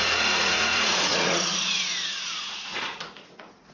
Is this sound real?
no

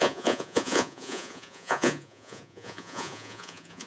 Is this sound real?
no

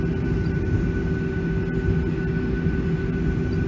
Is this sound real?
yes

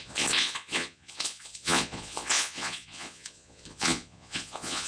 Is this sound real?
no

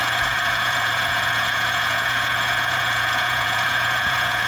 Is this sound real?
no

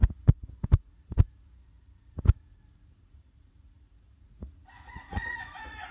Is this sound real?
no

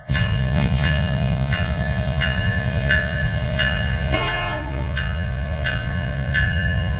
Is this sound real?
no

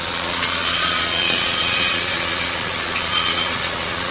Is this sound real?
no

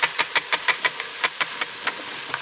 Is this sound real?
yes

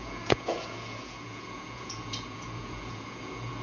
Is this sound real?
no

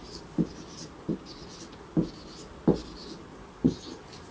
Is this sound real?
yes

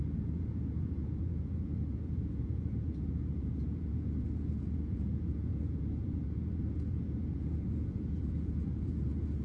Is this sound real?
no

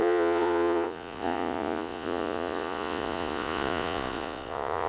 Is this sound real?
no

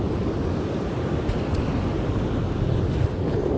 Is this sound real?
yes